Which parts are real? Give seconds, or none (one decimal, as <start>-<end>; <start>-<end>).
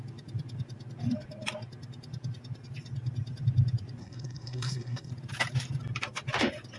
0.0-4.0; 5.1-6.8